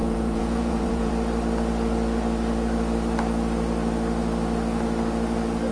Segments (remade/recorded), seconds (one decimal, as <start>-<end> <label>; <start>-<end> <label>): 0.0-1.1 remade; 1.1-5.7 recorded